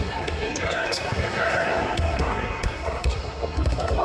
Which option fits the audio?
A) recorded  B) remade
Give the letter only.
B